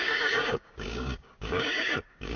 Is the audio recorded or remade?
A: remade